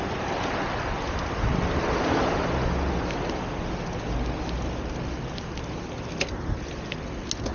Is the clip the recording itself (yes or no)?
yes